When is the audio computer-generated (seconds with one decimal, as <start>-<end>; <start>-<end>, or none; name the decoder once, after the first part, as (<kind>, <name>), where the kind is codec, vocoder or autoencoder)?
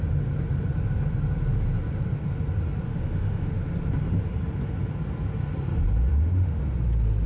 2.9-3.6 (autoencoder, DAC-VAE); 6.1-6.6